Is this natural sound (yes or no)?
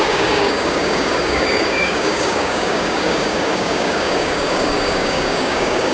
no